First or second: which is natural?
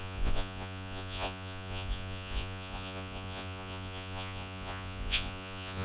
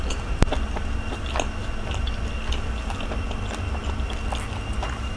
second